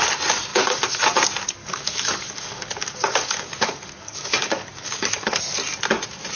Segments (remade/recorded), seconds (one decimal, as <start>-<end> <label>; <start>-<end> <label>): 0.0-0.5 recorded; 0.5-1.0 remade; 1.0-1.6 recorded; 1.6-5.4 remade; 5.4-6.4 recorded